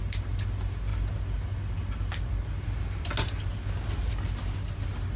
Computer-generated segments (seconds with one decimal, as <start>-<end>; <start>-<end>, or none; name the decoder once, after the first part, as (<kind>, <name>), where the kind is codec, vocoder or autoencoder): none